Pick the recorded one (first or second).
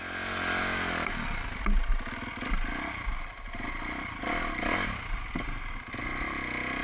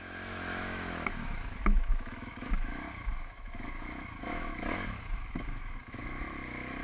first